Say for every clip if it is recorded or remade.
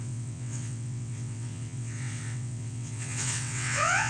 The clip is remade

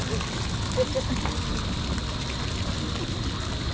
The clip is recorded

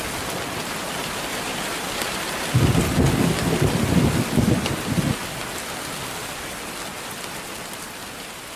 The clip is recorded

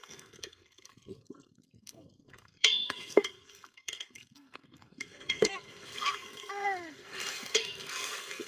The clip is remade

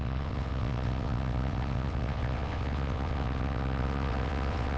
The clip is remade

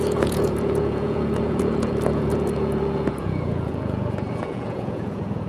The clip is remade